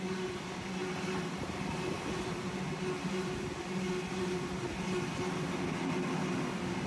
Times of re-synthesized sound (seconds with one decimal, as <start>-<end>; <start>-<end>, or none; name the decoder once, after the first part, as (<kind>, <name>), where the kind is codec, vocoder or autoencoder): none